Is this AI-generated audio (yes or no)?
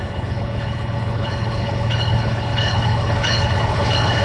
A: yes